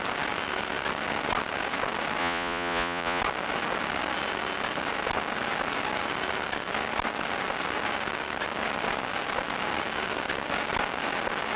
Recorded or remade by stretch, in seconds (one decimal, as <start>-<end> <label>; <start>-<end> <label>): 0.0-2.2 recorded; 2.2-3.2 remade; 3.2-11.6 recorded

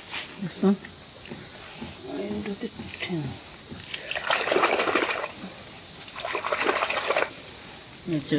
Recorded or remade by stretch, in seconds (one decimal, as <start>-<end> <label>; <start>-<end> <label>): 0.0-8.4 recorded

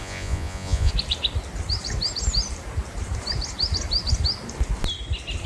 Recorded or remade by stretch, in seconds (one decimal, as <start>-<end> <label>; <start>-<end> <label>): 0.0-0.9 remade; 0.9-5.5 recorded

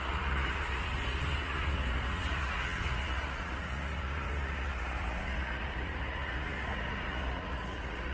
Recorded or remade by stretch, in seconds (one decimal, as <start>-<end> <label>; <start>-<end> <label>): 0.0-8.1 remade

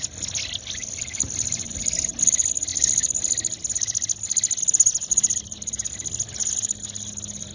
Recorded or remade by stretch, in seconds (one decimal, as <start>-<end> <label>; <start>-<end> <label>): 0.0-7.5 recorded